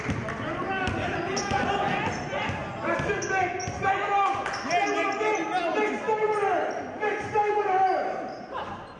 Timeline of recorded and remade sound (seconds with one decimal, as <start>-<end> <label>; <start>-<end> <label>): 0.0-9.0 recorded